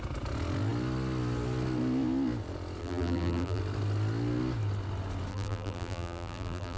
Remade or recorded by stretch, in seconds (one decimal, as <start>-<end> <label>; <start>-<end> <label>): 0.0-2.8 recorded; 2.8-3.6 remade; 3.6-5.3 recorded; 5.3-6.8 remade